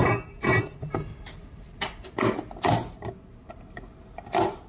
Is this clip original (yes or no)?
yes